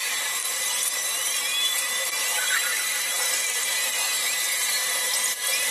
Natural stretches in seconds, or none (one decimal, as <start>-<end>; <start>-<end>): none